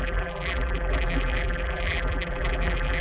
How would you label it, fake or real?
fake